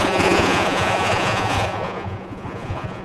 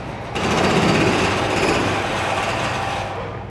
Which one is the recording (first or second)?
second